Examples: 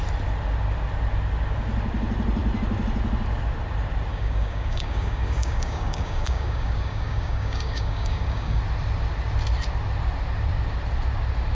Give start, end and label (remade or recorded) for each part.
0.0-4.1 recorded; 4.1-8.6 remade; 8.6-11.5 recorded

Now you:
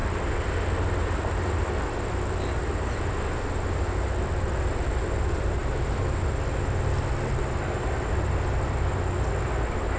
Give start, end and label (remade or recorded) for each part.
0.0-10.0 recorded

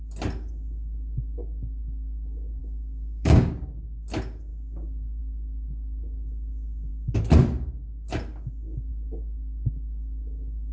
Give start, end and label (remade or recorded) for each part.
0.0-2.6 recorded; 2.6-3.5 remade; 3.5-10.7 recorded

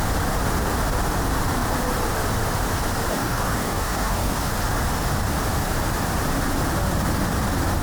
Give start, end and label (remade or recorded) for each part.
0.0-3.1 recorded; 3.1-4.5 remade; 4.5-7.8 recorded

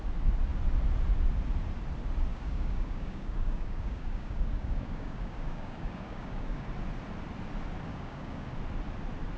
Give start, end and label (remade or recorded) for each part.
0.0-2.3 recorded; 2.3-6.7 remade; 6.7-7.9 recorded; 7.9-8.5 remade; 8.5-9.4 recorded